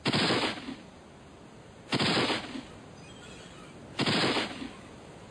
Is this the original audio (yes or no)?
yes